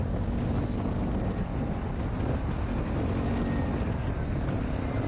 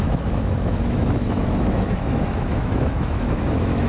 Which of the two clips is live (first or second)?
first